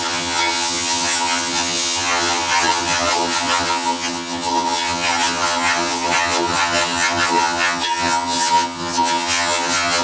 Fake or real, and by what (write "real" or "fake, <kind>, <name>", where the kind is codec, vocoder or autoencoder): fake, vocoder, HiFi-GAN